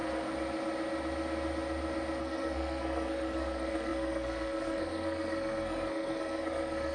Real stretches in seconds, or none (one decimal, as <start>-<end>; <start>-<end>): 0.0-2.2